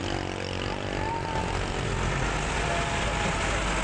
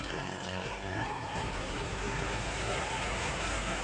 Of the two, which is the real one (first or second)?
first